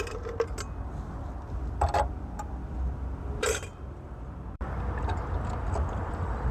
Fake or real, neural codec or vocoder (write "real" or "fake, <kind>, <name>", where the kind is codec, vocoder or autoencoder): real